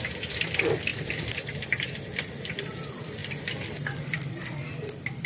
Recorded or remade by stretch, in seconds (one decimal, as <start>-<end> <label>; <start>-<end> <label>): 0.0-3.2 remade; 3.2-4.0 recorded; 4.0-5.3 remade